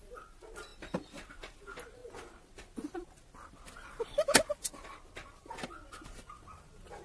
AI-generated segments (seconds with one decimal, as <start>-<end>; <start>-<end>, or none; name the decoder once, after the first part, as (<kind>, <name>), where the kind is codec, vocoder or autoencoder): none